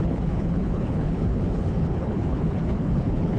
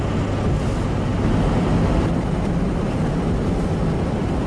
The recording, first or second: second